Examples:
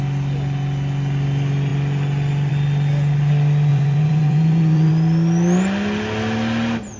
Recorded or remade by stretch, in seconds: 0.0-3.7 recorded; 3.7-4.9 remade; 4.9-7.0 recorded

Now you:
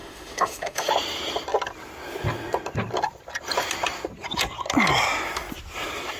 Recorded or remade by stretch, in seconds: 0.0-0.9 remade; 0.9-6.2 recorded

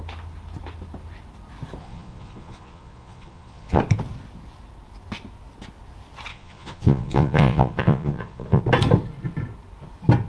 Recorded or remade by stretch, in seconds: 0.0-1.8 recorded; 1.8-3.8 remade; 3.8-6.3 recorded; 6.3-8.6 remade; 8.6-10.3 recorded

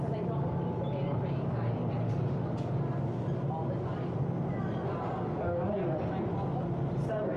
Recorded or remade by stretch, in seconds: 0.0-7.4 recorded

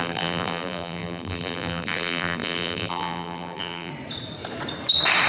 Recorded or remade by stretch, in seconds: 0.0-3.9 remade; 3.9-5.3 recorded

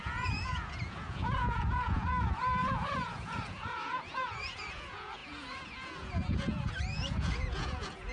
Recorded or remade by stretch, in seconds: 0.0-8.1 remade

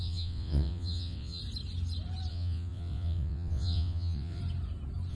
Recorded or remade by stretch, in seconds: 0.0-1.4 remade; 1.4-2.3 recorded; 2.3-4.4 remade; 4.4-5.1 recorded

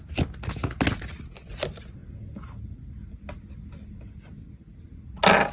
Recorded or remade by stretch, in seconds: 0.0-5.5 recorded